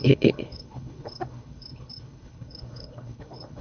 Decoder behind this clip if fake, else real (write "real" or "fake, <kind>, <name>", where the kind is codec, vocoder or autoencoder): fake, codec, HILCodec